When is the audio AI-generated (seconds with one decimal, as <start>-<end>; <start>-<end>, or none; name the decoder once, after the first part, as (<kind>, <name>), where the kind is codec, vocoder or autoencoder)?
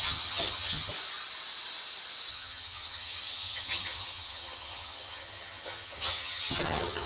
0.0-0.9 (vocoder, HiFi-GAN); 2.3-7.1